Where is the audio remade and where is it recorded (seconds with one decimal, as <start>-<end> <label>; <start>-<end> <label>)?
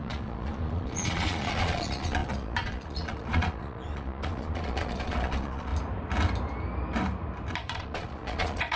0.0-5.7 remade; 5.7-7.5 recorded; 7.5-8.8 remade